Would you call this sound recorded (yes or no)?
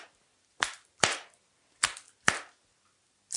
yes